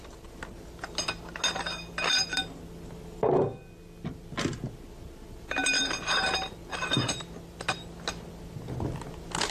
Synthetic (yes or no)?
no